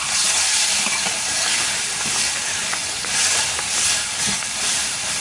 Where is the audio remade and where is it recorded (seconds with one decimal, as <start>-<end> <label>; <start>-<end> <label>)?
0.0-2.6 recorded; 2.6-3.4 remade; 3.4-5.2 recorded